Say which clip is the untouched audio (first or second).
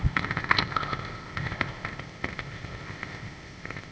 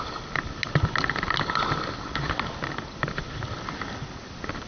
second